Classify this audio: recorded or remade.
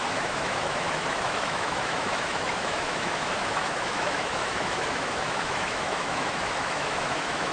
remade